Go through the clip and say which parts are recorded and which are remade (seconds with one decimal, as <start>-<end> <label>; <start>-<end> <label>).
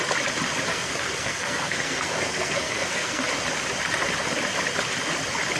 0.0-0.7 recorded; 0.7-3.2 remade; 3.2-5.6 recorded